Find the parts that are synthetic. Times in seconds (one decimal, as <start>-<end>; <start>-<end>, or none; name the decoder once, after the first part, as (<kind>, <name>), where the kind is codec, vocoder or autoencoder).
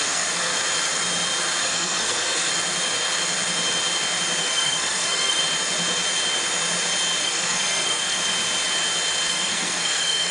0.0-0.5 (codec, SNAC); 1.6-2.5; 4.4-5.4; 7.2-8.2; 9.3-10.3